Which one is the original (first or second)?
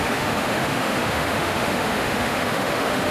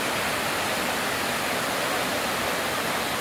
second